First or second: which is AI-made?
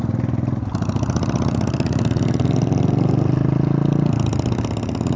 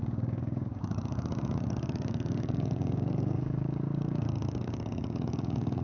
second